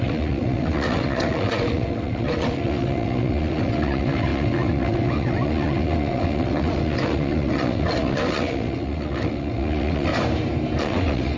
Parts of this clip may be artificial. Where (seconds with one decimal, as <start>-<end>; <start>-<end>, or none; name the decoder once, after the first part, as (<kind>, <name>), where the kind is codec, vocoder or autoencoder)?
0.0-10.1 (vocoder, WaveNeXt); 10.8-11.4